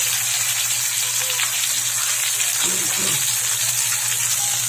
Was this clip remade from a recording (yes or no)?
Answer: no